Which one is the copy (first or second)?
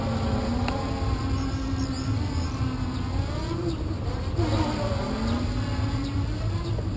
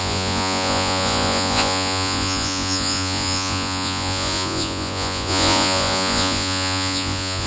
second